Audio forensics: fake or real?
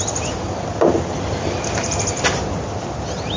real